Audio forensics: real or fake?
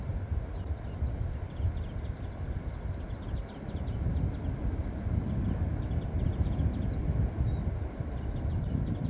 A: real